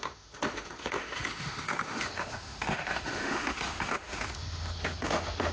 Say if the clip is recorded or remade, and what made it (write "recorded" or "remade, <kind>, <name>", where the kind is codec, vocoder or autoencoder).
remade, autoencoder, DAC-VAE